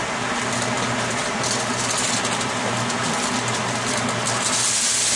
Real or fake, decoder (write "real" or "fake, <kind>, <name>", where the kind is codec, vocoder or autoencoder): real